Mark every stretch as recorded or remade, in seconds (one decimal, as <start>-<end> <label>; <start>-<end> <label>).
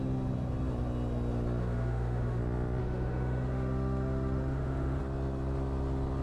0.0-1.6 recorded; 1.6-2.4 remade; 2.4-2.8 recorded; 2.8-5.0 remade; 5.0-6.2 recorded